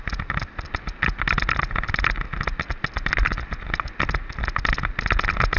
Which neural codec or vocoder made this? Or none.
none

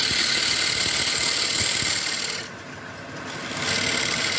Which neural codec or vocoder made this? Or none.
none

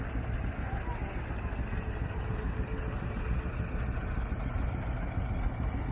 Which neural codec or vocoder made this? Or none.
none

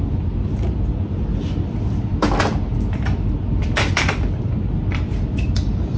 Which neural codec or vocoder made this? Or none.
none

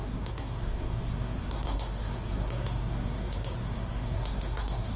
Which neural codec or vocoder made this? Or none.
codec, SNAC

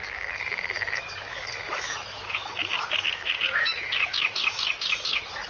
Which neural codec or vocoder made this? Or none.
autoencoder, DAC-VAE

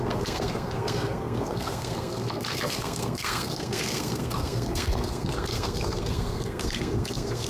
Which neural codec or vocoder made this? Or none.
codec, SNAC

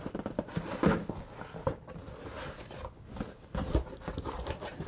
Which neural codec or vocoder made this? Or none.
none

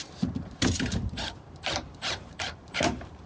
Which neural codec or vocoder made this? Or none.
vocoder, BigVGAN v2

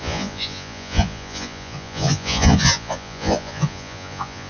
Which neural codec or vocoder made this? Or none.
vocoder, Vocos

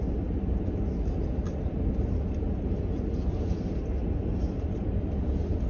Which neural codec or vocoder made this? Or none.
none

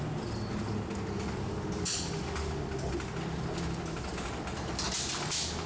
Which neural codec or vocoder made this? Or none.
none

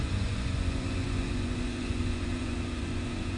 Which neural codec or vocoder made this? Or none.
vocoder, Vocos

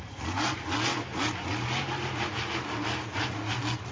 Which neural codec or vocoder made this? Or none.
none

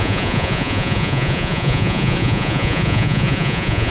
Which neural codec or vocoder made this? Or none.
vocoder, Vocos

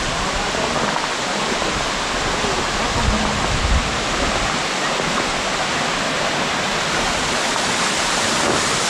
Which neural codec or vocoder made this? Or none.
none